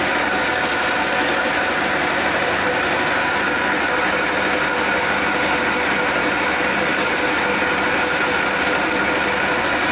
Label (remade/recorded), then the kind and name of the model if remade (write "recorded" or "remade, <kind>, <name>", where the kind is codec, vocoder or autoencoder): recorded